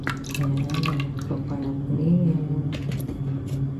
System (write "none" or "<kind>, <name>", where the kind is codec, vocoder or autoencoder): none